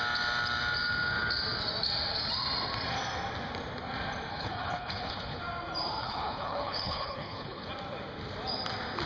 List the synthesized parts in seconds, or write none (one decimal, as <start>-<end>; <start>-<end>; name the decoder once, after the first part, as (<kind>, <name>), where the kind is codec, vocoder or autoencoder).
4.3-5.4 (codec, HILCodec); 6.0-7.7